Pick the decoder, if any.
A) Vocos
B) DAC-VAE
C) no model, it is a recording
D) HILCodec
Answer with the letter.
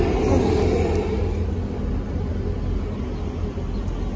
C